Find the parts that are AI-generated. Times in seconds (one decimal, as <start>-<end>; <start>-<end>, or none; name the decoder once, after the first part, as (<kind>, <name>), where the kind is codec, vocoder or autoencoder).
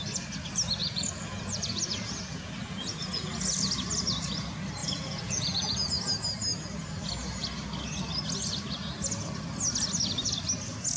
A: 0.8-3.3 (vocoder, Vocos); 4.8-5.9